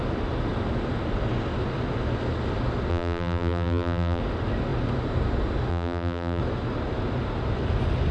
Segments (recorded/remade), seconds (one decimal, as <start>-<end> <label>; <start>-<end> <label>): 0.0-2.9 recorded; 2.9-4.2 remade; 4.2-5.7 recorded; 5.7-6.4 remade; 6.4-8.1 recorded